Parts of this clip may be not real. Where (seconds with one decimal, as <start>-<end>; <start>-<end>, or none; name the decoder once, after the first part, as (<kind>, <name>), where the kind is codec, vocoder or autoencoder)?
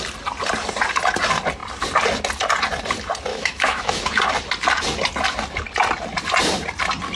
3.3-4.2 (autoencoder, DAC-VAE)